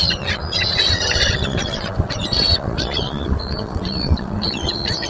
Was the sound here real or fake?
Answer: fake